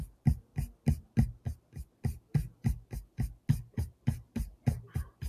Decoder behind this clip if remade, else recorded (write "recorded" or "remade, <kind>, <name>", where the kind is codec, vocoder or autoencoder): recorded